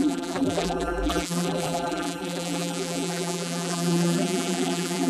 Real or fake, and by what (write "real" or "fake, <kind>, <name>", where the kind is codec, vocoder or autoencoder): fake, vocoder, BigVGAN v2